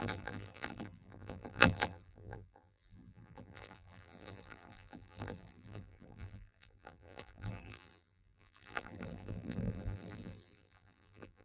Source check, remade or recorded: remade